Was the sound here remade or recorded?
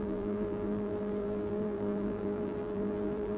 remade